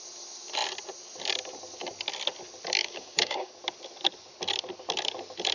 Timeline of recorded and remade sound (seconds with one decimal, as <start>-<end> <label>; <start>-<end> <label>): 0.0-2.8 recorded; 2.8-3.5 remade; 3.5-5.5 recorded